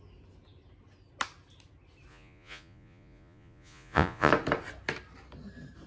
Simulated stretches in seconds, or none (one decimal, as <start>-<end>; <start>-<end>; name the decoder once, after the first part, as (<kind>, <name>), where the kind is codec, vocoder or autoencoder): 2.1-4.3 (vocoder, Vocos)